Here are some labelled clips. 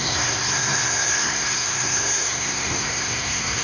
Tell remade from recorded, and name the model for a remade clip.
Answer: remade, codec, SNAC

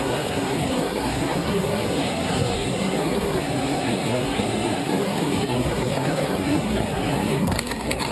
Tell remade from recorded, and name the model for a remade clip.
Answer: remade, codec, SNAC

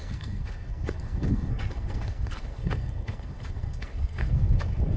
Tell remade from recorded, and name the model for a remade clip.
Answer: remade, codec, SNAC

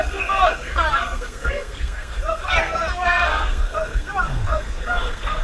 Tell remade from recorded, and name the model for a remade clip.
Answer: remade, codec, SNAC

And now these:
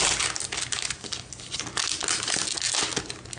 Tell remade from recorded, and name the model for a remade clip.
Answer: recorded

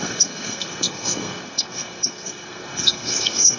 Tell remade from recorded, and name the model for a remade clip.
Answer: remade, codec, SNAC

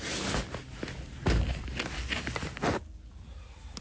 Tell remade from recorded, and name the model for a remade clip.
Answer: recorded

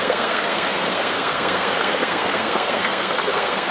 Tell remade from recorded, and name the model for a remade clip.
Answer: remade, codec, SNAC